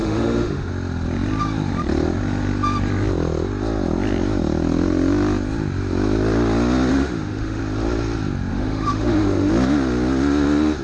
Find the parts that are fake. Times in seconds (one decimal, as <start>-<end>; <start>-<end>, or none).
0.0-0.7; 6.9-7.6; 8.5-9.5